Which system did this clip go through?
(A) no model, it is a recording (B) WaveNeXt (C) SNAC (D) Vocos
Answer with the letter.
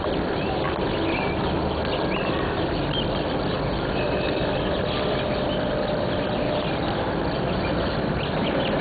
A